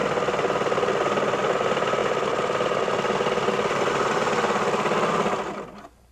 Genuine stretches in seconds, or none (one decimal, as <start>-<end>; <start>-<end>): 0.0-6.1